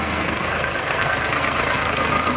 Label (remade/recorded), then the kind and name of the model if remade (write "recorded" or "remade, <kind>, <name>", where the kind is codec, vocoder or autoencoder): remade, codec, SNAC